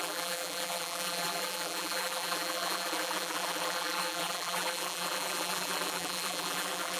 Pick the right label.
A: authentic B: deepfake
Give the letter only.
B